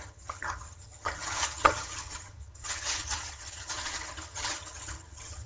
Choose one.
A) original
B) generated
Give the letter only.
B